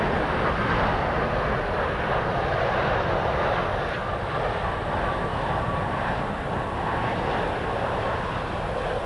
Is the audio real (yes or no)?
yes